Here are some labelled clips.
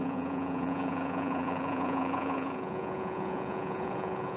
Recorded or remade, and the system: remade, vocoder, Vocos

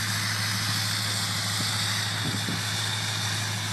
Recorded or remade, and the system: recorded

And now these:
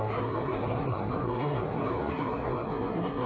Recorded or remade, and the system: remade, codec, SNAC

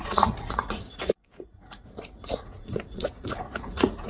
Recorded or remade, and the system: remade, vocoder, Vocos